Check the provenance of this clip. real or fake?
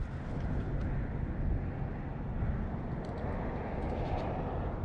real